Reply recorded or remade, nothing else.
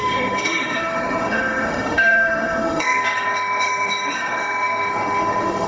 remade